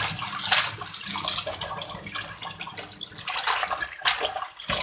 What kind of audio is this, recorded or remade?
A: recorded